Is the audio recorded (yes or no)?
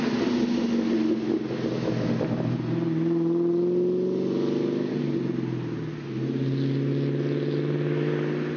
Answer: yes